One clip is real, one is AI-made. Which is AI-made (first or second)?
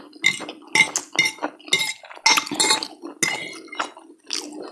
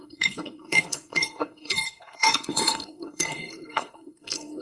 second